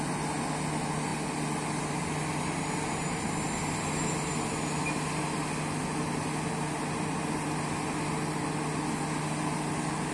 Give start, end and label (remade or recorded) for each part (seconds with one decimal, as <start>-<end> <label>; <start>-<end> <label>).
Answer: 0.0-10.1 recorded